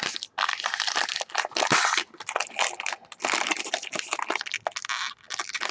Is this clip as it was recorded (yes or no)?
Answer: yes